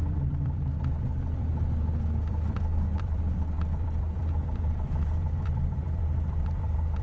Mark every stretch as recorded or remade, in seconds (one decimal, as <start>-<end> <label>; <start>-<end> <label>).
0.0-1.5 remade; 1.5-2.3 recorded; 2.3-7.0 remade